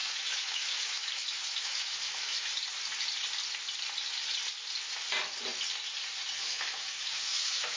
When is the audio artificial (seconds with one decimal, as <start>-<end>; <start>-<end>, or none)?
0.0-2.5; 6.3-7.8